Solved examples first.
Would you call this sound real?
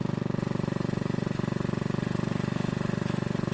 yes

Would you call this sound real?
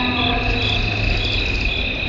yes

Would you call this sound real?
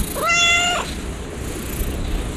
yes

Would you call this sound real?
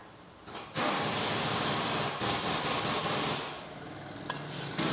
yes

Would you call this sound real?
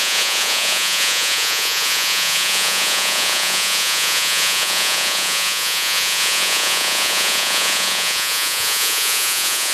no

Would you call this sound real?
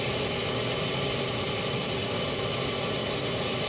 yes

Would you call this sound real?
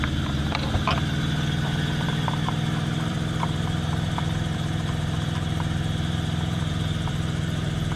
no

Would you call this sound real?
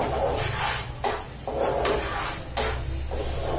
yes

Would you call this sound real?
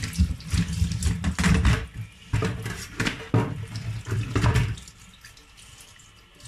yes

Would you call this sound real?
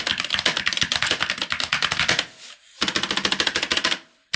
yes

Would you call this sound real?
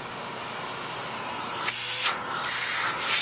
yes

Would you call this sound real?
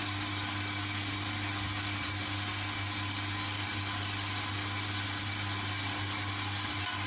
yes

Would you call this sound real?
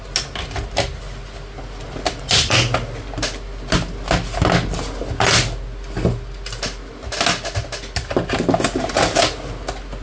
yes